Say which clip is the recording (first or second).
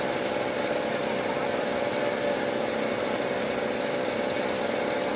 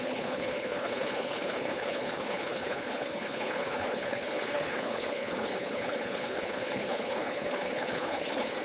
first